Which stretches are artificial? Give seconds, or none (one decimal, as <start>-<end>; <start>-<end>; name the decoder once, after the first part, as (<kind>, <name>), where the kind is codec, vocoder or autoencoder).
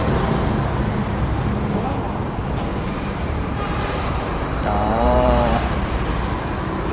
0.0-0.6 (vocoder, BigVGAN v2); 2.7-6.1